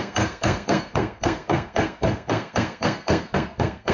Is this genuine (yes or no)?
no